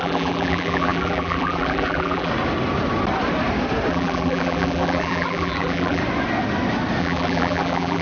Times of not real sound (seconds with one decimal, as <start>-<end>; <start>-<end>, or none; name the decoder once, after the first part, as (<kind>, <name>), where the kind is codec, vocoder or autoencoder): 0.0-2.3 (vocoder, BigVGAN v2); 3.9-6.0; 7.0-8.0